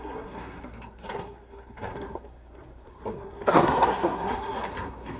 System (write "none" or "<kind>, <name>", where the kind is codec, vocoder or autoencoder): codec, SNAC